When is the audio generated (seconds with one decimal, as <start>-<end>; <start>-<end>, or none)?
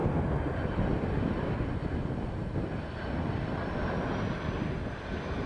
none